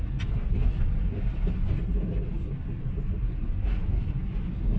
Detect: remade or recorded recorded